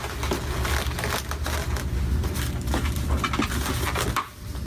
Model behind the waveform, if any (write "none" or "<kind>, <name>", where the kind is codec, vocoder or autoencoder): none